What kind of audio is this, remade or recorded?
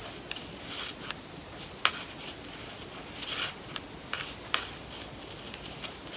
recorded